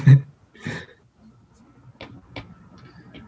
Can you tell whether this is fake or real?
real